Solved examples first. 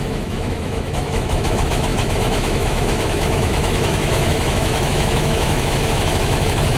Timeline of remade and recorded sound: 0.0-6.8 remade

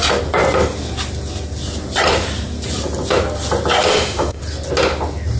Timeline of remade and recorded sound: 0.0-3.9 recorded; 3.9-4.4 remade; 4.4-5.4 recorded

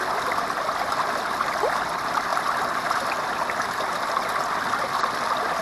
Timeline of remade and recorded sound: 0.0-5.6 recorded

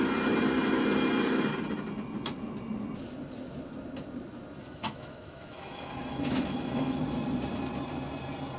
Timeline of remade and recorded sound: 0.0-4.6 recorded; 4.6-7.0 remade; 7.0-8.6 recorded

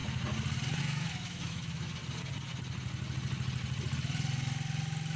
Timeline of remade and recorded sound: 0.0-0.8 recorded; 0.8-2.0 remade; 2.0-5.2 recorded

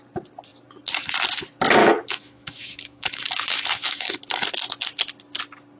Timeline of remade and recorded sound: 0.0-1.8 recorded; 1.8-4.2 remade; 4.2-5.8 recorded

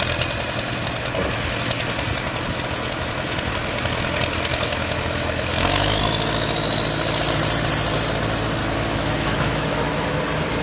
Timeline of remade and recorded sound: 0.0-4.5 recorded; 4.5-6.0 remade; 6.0-8.6 recorded; 8.6-10.2 remade; 10.2-10.6 recorded